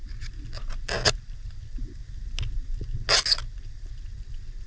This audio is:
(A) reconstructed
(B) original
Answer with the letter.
B